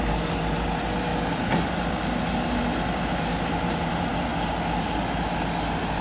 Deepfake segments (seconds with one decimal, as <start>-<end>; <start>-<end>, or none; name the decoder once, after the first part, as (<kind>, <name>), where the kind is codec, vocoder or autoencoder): none